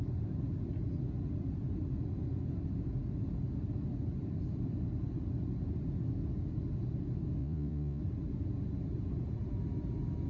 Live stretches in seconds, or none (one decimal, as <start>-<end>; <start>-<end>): 0.0-7.4; 8.0-10.3

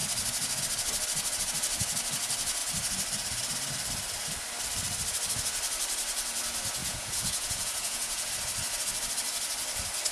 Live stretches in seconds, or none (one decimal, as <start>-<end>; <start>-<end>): 0.0-6.8; 8.3-10.1

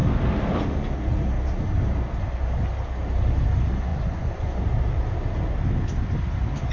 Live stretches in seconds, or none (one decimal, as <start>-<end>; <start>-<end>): 0.0-3.9; 4.6-6.7

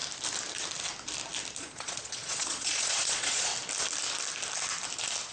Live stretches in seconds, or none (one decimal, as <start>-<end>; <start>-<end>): 0.0-1.6; 3.5-5.3

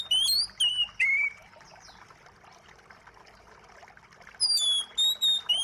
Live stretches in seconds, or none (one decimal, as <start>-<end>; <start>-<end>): 0.0-5.6

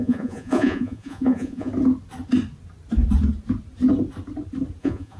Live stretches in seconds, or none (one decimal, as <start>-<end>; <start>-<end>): 1.7-4.8

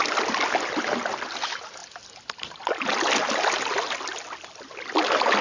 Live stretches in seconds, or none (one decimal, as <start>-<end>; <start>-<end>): 0.0-5.4